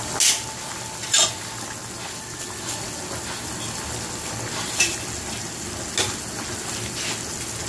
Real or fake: real